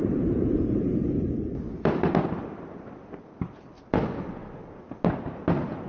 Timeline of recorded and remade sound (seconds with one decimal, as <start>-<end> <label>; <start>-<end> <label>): 0.0-2.1 remade; 2.1-5.9 recorded